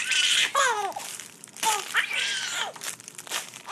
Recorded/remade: remade